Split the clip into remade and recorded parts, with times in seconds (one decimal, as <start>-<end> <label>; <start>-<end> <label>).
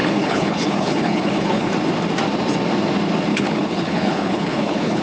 0.0-1.7 remade; 1.7-3.3 recorded; 3.3-5.0 remade